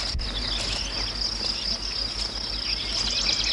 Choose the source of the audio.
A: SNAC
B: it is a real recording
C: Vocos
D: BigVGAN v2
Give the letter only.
B